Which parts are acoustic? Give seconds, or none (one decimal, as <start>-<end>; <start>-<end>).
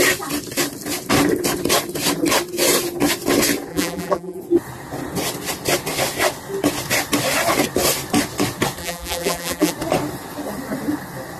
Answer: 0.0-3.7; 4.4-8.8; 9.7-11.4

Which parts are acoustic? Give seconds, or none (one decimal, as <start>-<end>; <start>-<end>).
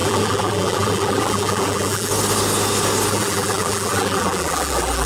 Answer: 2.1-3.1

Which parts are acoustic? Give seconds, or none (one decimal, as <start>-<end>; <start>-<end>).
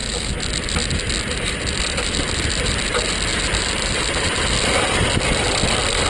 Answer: 0.0-3.3; 4.4-6.1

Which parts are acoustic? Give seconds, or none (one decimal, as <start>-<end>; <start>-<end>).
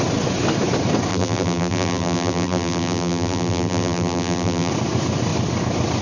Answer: 0.0-1.1; 4.7-6.0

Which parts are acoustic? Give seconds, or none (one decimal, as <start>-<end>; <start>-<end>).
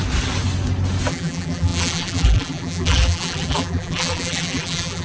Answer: 0.0-1.1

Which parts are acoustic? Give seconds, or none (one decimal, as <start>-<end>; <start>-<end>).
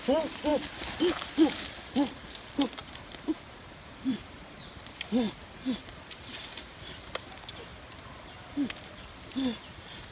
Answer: 0.0-2.8; 7.3-10.1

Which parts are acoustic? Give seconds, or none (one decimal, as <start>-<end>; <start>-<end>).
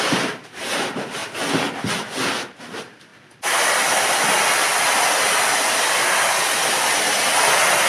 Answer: 1.2-1.9; 3.1-7.4